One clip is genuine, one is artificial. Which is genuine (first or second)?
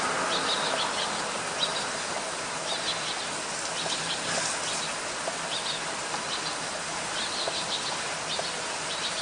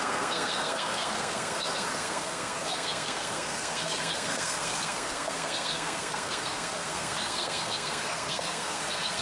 first